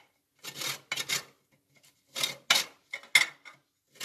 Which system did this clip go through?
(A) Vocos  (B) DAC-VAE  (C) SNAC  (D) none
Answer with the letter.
D